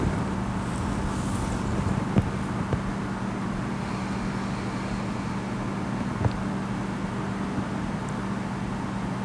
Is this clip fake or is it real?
real